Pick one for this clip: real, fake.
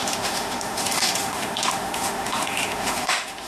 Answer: fake